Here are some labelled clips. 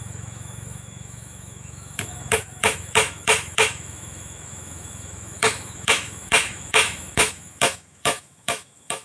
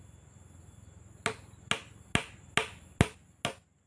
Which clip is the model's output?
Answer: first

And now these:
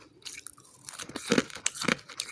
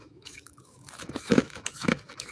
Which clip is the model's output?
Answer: second